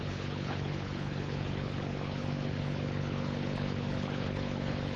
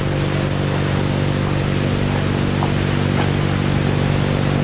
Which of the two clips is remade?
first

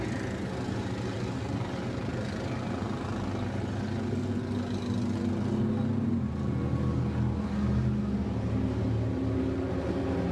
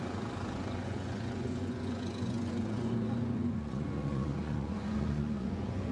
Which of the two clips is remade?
second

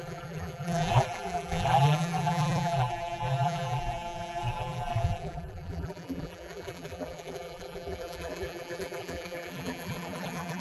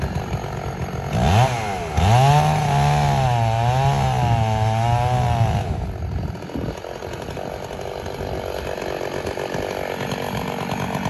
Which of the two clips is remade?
first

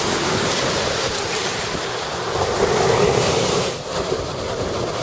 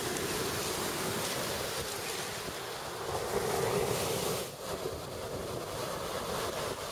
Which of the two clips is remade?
first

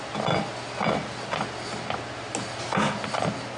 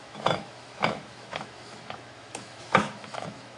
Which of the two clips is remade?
second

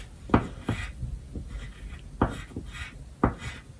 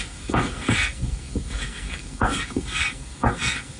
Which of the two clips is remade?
second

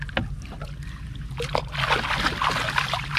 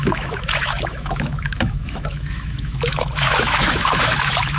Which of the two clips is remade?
second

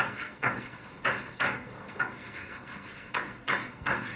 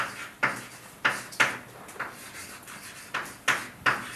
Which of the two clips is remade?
first